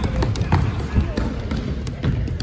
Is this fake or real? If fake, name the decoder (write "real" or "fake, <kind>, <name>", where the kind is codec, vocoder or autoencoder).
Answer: real